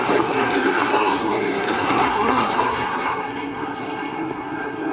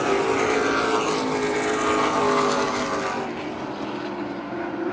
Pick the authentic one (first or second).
second